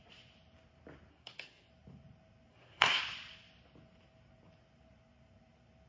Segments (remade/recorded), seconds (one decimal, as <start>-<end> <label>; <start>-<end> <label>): 0.0-1.1 recorded; 1.1-1.7 remade; 1.7-2.5 recorded; 2.5-3.0 remade; 3.0-5.9 recorded

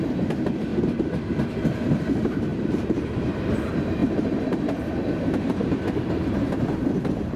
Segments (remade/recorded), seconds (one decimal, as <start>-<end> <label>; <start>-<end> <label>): 0.0-0.7 remade; 0.7-2.1 recorded; 2.1-7.4 remade